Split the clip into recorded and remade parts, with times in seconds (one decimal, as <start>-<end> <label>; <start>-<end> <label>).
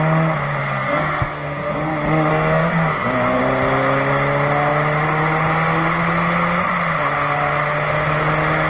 0.0-0.6 recorded; 0.6-1.9 remade; 1.9-2.3 recorded; 2.3-3.4 remade; 3.4-8.7 recorded